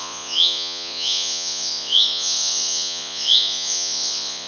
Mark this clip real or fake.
fake